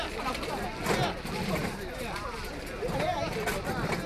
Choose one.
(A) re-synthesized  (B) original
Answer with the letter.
B